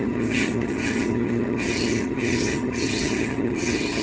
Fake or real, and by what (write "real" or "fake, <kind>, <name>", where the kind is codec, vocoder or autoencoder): fake, vocoder, HiFi-GAN